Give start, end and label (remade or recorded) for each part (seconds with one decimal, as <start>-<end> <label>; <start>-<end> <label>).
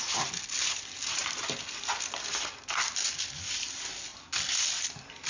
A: 0.0-5.3 recorded